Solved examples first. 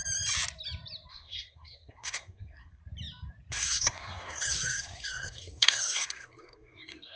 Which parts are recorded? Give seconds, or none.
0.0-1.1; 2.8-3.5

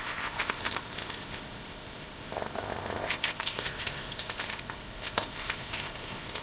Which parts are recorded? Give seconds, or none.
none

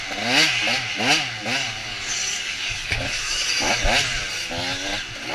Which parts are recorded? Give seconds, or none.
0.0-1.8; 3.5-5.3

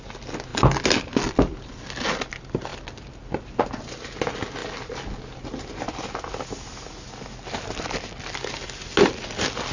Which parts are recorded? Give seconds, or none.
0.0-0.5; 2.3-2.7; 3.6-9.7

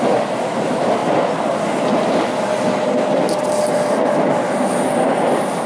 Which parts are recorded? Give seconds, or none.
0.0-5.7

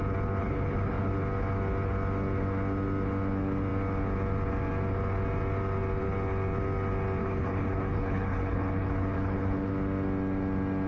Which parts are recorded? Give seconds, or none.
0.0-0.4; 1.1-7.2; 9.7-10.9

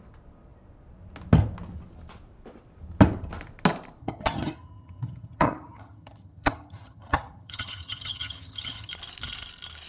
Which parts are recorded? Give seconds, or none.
0.0-4.0; 8.9-9.9